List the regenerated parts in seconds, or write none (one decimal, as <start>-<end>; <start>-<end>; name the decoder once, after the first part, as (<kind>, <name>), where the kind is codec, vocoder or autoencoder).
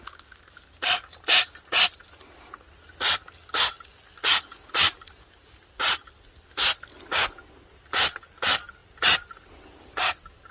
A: none